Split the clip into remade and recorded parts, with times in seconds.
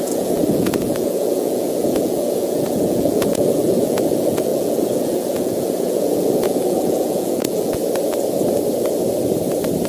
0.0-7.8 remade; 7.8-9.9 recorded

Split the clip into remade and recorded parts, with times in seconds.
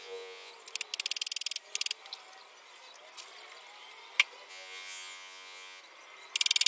0.0-0.5 remade; 0.5-4.5 recorded; 4.5-5.8 remade; 5.8-6.7 recorded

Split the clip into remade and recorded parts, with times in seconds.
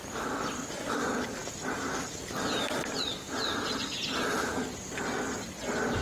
0.0-6.0 recorded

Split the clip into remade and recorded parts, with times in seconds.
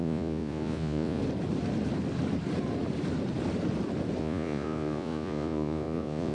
0.0-1.2 remade; 1.2-4.2 recorded; 4.2-6.3 remade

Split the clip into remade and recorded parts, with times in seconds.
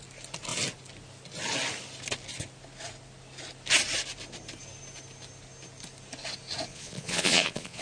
0.0-6.7 recorded; 6.7-7.8 remade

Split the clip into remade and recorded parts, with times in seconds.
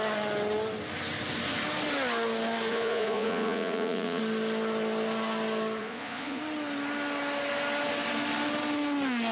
0.0-2.7 recorded; 2.7-4.2 remade; 4.2-5.8 recorded; 5.8-6.4 remade; 6.4-9.3 recorded